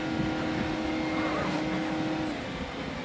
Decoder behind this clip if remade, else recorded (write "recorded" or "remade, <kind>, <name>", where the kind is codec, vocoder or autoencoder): recorded